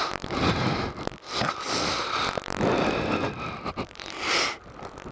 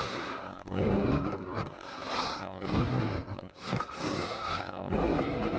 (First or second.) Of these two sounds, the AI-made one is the second